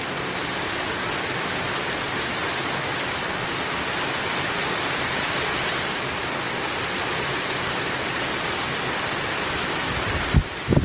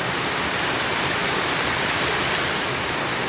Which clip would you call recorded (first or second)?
first